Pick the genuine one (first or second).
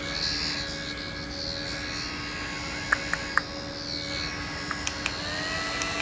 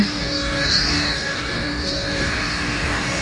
first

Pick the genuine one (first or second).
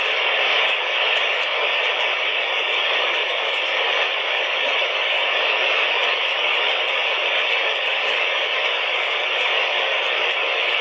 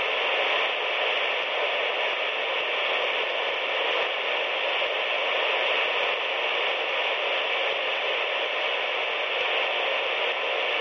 second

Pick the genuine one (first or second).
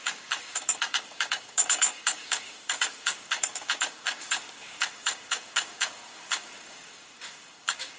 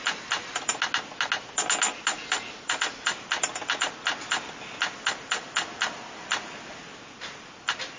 second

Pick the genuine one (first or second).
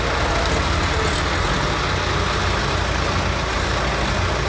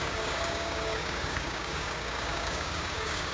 first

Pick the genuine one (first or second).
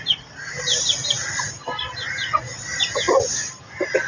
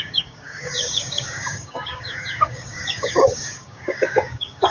first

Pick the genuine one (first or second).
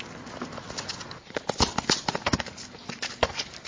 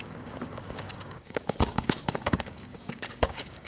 first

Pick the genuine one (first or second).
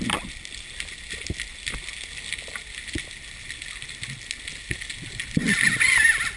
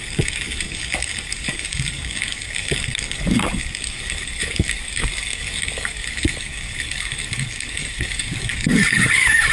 first